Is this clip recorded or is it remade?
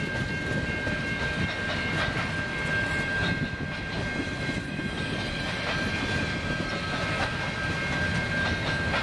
recorded